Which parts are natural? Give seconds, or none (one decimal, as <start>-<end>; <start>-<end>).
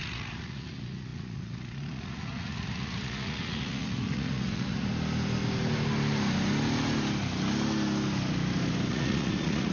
4.9-8.9